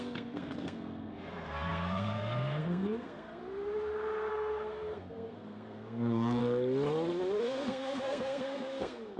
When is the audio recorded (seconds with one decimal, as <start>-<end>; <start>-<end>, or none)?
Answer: 3.4-4.3; 6.4-7.4